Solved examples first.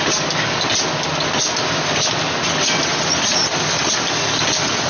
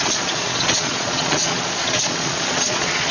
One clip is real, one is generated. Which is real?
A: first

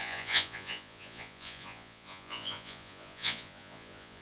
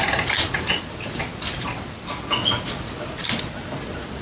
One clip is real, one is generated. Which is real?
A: second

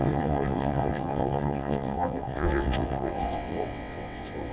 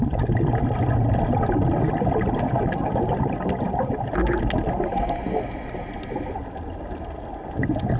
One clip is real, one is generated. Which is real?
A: second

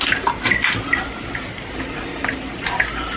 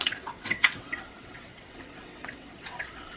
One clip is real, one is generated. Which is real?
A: first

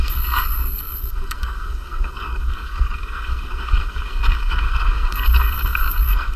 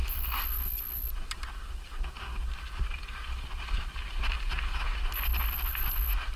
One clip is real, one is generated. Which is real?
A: second